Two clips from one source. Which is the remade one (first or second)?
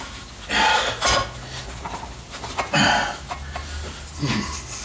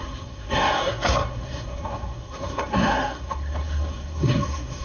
second